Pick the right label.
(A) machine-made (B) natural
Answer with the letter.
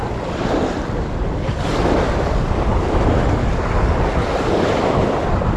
B